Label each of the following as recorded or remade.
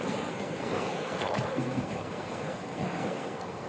remade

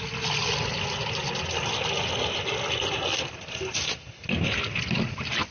recorded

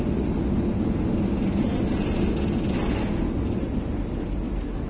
recorded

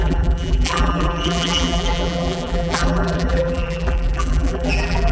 remade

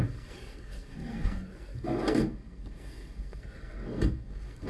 remade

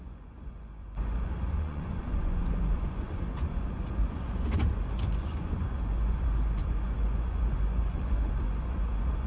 remade